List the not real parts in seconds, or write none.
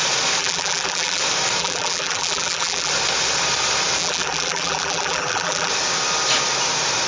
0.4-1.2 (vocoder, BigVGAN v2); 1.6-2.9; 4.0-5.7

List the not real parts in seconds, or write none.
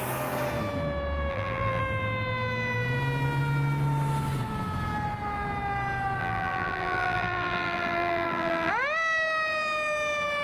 1.3-1.8 (vocoder, BigVGAN v2); 6.2-8.7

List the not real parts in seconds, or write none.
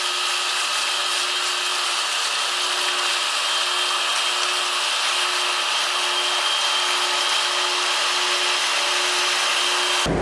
1.7-3.1 (vocoder, BigVGAN v2)